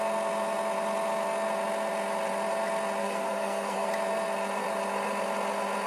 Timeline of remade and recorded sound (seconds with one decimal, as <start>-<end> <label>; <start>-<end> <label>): 0.0-3.0 recorded; 3.0-3.9 remade; 3.9-5.9 recorded